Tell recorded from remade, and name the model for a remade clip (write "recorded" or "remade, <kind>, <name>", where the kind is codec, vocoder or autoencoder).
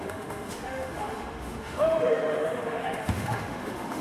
remade, autoencoder, DAC-VAE